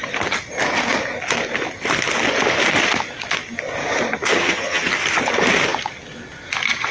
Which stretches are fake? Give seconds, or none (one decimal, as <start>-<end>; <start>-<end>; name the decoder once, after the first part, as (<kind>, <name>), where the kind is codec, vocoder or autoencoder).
4.3-4.9 (vocoder, HiFi-GAN)